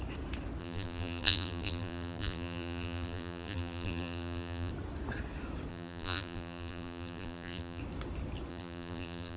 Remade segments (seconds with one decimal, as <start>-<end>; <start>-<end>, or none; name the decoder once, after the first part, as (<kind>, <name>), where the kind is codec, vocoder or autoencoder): 0.6-4.7 (vocoder, BigVGAN v2); 5.7-7.8; 8.5-9.4